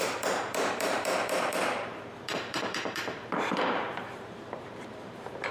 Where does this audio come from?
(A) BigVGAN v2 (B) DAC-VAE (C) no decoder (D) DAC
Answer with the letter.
A